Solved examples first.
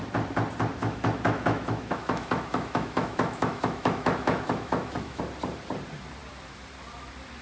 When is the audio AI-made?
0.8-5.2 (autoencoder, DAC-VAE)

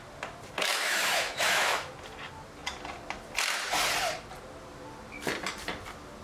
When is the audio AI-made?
0.7-1.9 (autoencoder, DAC-VAE)